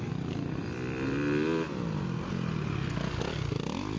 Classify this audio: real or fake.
real